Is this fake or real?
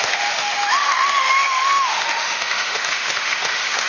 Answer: fake